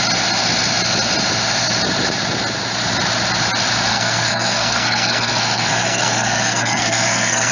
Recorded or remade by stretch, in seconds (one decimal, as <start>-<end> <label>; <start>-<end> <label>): 0.0-3.9 recorded; 3.9-7.5 remade